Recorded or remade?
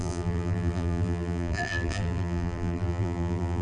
remade